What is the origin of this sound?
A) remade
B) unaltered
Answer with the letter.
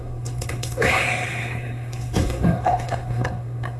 A